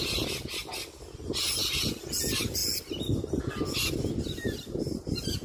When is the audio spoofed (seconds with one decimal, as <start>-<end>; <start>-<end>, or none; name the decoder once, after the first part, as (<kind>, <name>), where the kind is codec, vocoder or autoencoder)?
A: none